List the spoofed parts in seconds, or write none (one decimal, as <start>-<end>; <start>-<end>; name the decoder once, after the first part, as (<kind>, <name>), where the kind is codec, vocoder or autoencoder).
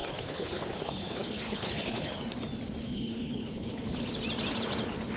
0.0-2.2 (codec, HILCodec); 2.8-4.0